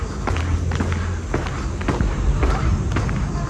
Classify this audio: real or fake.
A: real